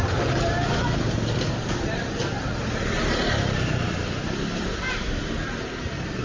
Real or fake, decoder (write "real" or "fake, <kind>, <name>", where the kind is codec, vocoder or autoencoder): real